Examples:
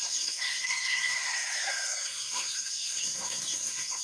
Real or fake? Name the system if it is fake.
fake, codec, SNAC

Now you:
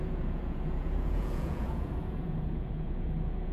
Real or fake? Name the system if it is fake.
fake, vocoder, Vocos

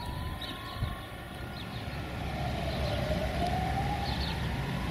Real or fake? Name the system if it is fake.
real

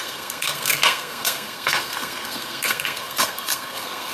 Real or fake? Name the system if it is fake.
fake, codec, SNAC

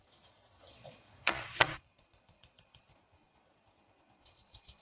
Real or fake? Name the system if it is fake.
fake, vocoder, Vocos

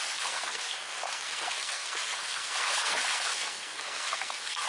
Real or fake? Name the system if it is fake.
fake, codec, SNAC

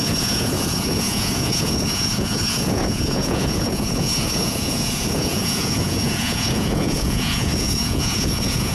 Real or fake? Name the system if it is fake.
fake, vocoder, Vocos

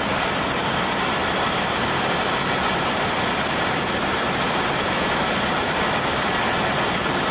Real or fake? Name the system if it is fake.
real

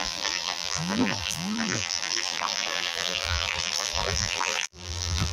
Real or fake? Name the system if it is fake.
fake, vocoder, BigVGAN v2